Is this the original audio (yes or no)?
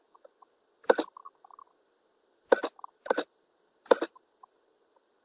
yes